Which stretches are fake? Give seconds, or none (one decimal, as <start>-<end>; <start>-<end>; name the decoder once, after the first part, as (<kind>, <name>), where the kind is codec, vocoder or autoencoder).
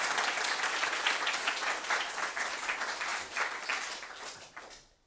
none